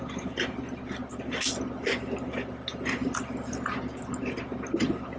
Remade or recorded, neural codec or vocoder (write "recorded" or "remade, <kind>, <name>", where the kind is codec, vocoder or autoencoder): recorded